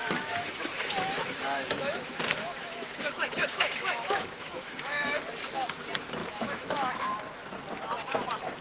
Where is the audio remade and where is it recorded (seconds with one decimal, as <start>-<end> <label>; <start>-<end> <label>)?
0.0-5.2 remade; 5.2-6.2 recorded; 6.2-6.9 remade; 6.9-8.6 recorded